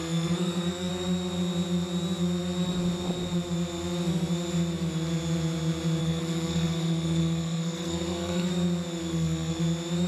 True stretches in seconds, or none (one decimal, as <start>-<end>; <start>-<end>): 0.9-6.0; 8.5-9.0; 9.6-10.1